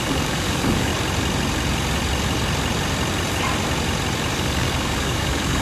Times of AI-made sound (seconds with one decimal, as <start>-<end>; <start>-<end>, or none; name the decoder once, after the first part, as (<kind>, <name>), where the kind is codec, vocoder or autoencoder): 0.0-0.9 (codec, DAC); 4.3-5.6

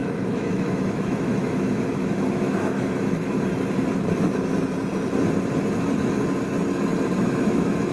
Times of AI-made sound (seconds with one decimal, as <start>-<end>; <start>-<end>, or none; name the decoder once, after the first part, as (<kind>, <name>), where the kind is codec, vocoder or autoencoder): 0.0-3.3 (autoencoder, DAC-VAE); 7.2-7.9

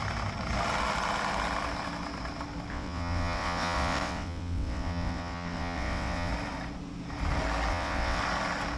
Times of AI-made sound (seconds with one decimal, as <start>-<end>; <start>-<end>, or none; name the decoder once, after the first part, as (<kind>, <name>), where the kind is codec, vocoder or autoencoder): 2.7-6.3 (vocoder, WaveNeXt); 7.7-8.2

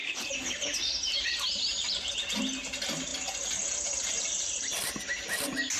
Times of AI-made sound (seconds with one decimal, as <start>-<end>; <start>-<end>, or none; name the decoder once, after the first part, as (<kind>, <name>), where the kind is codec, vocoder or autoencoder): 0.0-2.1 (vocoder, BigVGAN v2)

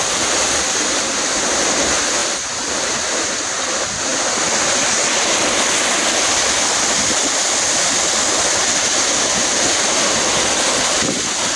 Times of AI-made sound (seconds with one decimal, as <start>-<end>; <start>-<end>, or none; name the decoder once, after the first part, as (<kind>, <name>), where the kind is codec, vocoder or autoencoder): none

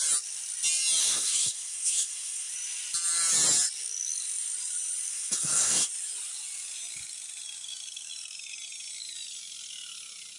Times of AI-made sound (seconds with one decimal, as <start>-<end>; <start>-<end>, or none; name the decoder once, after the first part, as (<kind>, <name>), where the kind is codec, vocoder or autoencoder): 1.0-2.5 (codec, SNAC); 5.1-5.9